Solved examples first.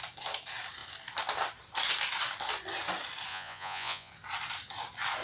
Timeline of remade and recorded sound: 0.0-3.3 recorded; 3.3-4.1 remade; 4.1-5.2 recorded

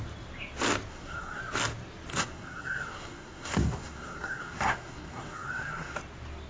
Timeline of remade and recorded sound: 0.0-0.9 recorded; 0.9-1.4 remade; 1.4-2.1 recorded; 2.1-6.0 remade; 6.0-6.5 recorded

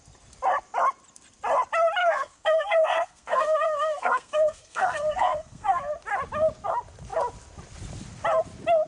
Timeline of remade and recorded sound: 0.0-2.0 recorded; 2.0-5.8 remade; 5.8-8.9 recorded

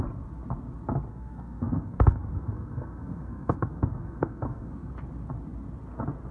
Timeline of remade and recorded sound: 0.0-1.1 recorded; 1.1-4.9 remade; 4.9-6.3 recorded

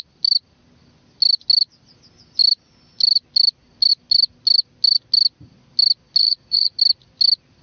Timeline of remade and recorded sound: 0.0-6.2 recorded; 6.2-6.8 remade; 6.8-7.6 recorded